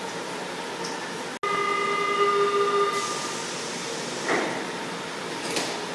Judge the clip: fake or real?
real